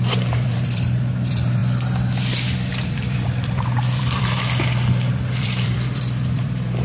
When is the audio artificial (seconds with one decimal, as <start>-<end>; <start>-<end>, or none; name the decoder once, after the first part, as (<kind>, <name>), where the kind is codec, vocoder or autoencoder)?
0.0-1.6 (vocoder, BigVGAN v2); 2.7-6.8